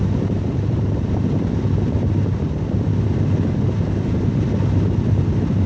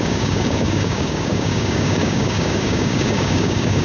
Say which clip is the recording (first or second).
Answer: first